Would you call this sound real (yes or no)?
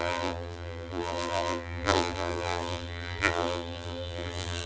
no